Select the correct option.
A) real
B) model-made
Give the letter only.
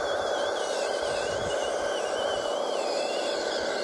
A